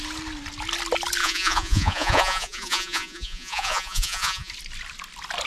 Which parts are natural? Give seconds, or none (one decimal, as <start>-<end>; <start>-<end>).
0.0-1.2; 4.5-5.5

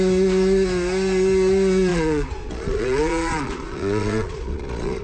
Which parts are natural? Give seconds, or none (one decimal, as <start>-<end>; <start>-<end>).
0.0-1.9

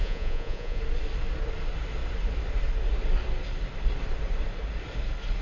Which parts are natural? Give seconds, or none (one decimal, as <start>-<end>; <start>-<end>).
0.8-5.4